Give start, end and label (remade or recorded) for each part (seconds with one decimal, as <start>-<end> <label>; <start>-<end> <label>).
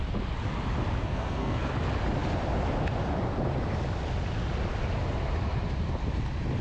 0.0-1.0 recorded; 1.0-1.7 remade; 1.7-6.6 recorded